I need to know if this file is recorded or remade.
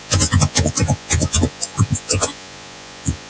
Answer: remade